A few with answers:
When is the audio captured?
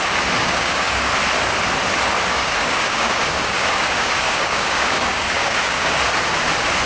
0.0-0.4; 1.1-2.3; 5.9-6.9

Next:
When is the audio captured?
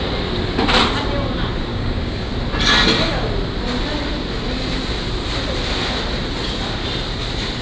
0.0-1.7; 2.3-7.6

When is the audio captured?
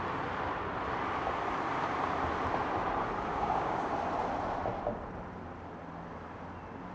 0.0-3.3; 3.9-6.9